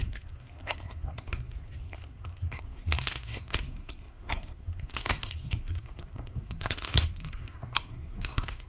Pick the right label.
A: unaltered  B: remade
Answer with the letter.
B